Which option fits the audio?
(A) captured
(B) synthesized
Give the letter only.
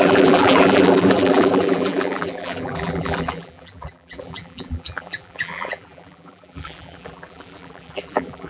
B